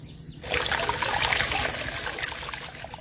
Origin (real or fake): real